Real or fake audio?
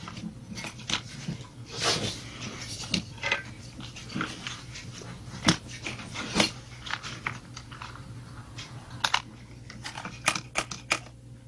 real